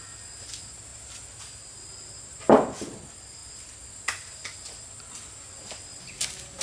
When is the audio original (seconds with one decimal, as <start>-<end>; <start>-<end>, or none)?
0.0-6.6